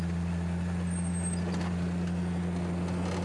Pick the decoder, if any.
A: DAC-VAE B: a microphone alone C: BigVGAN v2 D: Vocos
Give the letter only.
B